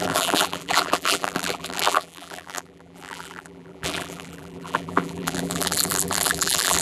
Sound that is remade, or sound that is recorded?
remade